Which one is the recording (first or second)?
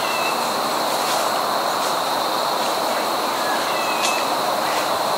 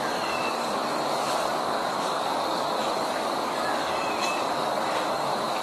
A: first